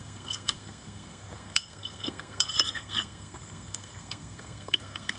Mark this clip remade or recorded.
remade